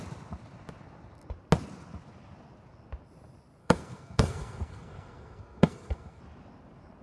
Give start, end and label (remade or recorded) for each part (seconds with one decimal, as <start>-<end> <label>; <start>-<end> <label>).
0.0-3.6 recorded; 3.6-6.2 remade; 6.2-7.0 recorded